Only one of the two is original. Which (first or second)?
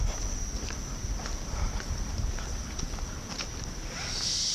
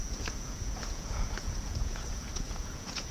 first